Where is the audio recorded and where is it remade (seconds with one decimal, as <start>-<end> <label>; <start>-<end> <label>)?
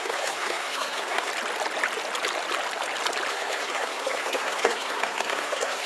0.0-1.3 remade; 1.3-3.3 recorded; 3.3-5.9 remade